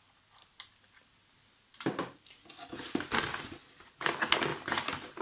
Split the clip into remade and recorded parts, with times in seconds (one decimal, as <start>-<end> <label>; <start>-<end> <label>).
0.0-5.2 recorded